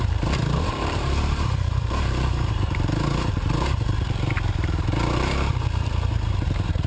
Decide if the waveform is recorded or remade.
remade